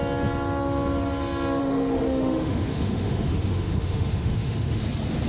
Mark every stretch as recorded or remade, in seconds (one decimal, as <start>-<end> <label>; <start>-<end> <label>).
0.0-1.6 recorded; 1.6-4.8 remade; 4.8-5.3 recorded